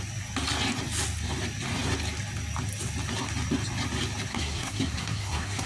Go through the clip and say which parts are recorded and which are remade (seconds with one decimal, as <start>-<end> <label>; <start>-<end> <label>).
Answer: 0.0-4.3 recorded; 4.3-5.7 remade